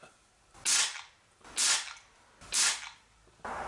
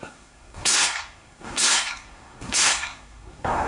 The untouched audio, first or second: first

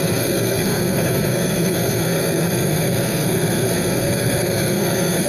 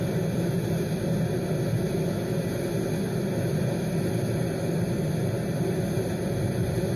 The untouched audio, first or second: second